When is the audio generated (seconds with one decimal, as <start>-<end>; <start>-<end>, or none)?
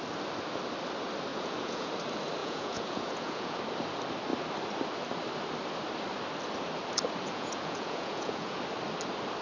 1.3-1.9; 2.4-3.6; 7.2-8.6